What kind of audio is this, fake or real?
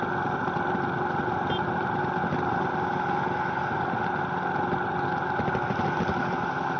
real